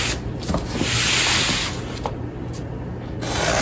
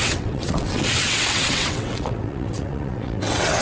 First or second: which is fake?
second